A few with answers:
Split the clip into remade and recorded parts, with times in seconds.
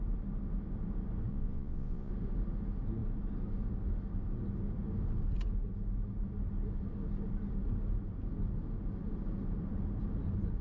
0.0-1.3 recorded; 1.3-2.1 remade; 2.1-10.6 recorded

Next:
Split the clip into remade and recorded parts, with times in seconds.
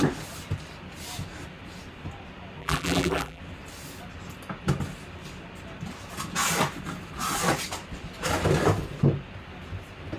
0.0-2.6 recorded; 2.6-3.4 remade; 3.4-10.2 recorded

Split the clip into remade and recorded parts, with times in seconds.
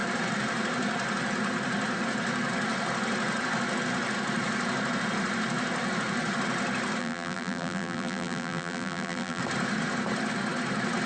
0.0-7.0 recorded; 7.0-9.4 remade; 9.4-11.1 recorded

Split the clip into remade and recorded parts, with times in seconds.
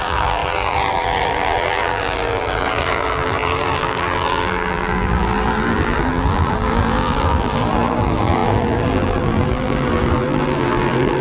0.0-11.2 remade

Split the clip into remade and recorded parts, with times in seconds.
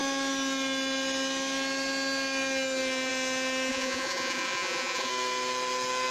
0.0-3.7 recorded; 3.7-5.1 remade; 5.1-6.1 recorded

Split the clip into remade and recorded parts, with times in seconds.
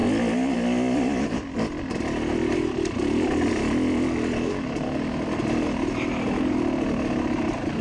0.0-7.8 recorded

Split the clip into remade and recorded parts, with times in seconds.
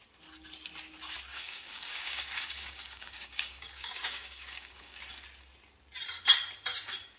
0.0-1.3 recorded; 1.3-5.0 remade; 5.0-7.2 recorded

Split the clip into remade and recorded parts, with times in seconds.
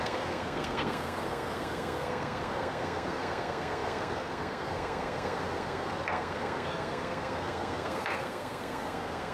0.0-9.3 remade